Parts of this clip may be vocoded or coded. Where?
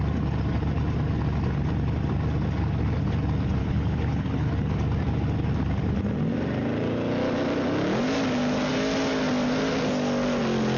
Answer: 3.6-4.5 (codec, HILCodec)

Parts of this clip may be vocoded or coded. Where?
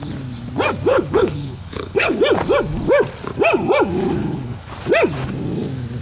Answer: 0.9-2.2 (codec, HILCodec); 4.2-4.7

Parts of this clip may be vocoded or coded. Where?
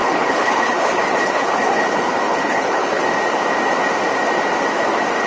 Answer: 0.0-3.0 (codec, HILCodec)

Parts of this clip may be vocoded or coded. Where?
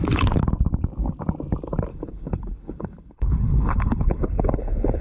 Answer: 1.9-5.0 (codec, HILCodec)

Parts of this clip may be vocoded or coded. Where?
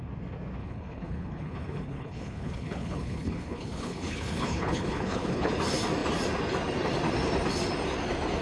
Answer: 0.6-5.5 (codec, HILCodec)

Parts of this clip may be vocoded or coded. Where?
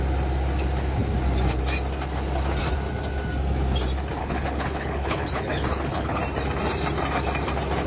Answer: 4.2-6.2 (codec, HILCodec)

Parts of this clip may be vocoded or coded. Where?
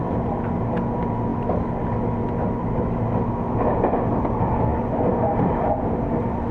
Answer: none